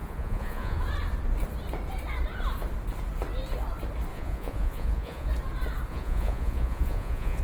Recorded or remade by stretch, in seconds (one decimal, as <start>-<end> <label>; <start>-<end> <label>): 0.0-0.8 remade; 0.8-4.1 recorded; 4.1-5.3 remade; 5.3-5.9 recorded; 5.9-7.4 remade